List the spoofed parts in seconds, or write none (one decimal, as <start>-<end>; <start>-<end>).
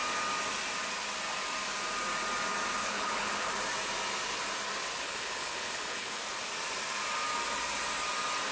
2.8-3.5; 5.0-6.2